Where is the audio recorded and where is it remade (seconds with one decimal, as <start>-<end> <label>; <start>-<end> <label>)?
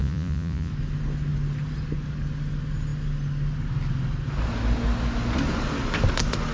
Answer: 0.0-0.7 remade; 0.7-6.5 recorded